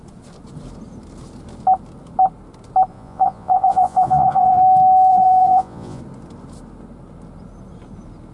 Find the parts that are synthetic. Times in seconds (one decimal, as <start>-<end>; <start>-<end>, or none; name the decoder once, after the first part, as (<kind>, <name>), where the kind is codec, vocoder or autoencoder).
2.9-4.6 (vocoder, Vocos); 5.1-6.0